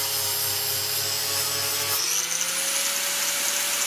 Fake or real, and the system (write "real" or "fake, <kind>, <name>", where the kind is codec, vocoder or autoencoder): real